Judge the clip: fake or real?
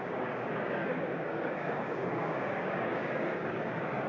fake